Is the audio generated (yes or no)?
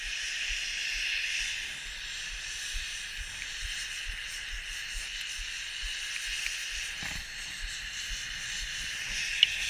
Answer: no